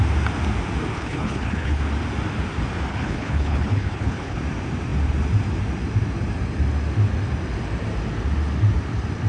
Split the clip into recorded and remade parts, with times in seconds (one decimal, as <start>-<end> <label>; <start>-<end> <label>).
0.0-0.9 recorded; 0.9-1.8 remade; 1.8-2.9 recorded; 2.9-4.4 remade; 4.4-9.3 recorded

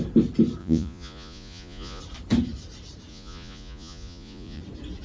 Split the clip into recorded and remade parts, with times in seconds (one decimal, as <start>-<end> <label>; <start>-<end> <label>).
0.0-0.6 recorded; 0.6-2.0 remade; 2.0-3.1 recorded; 3.1-4.6 remade; 4.6-5.0 recorded

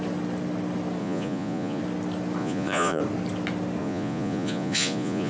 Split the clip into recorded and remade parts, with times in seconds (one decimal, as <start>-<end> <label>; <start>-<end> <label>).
0.0-1.0 recorded; 1.0-1.8 remade; 1.8-2.4 recorded; 2.4-3.0 remade; 3.0-3.8 recorded; 3.8-5.3 remade

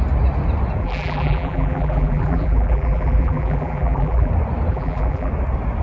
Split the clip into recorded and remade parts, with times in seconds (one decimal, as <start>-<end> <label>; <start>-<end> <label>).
0.0-0.8 recorded; 0.8-4.3 remade; 4.3-4.7 recorded; 4.7-5.3 remade; 5.3-5.8 recorded

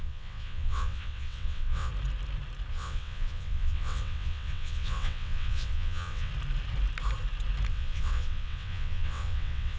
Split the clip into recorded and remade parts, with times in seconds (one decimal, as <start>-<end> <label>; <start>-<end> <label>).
0.0-1.9 remade; 1.9-2.7 recorded; 2.7-6.3 remade; 6.3-7.7 recorded; 7.7-9.8 remade